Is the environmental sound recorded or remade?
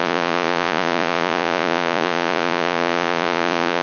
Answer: remade